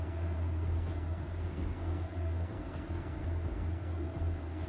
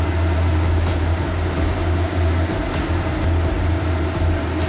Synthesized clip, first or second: first